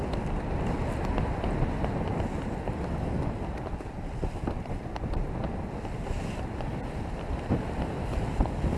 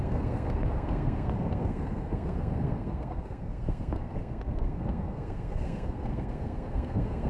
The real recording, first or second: first